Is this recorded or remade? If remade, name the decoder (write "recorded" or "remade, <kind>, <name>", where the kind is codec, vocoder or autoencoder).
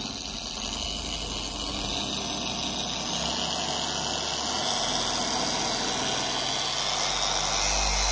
recorded